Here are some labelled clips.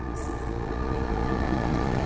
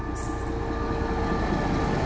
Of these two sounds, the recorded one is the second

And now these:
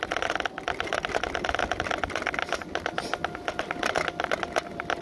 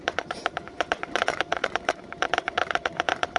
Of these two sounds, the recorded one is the first